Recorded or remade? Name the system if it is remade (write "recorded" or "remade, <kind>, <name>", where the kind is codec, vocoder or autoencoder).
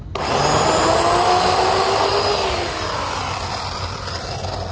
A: recorded